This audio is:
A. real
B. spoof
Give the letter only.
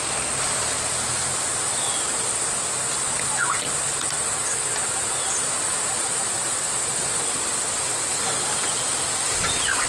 A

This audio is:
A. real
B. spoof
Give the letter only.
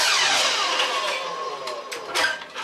A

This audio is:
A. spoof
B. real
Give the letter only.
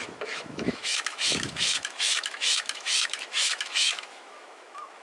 A